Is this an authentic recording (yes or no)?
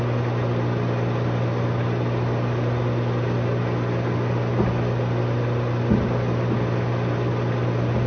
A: yes